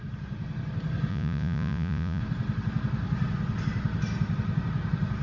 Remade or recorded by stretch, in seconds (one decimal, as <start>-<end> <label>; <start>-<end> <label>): 0.0-1.1 recorded; 1.1-2.2 remade; 2.2-5.2 recorded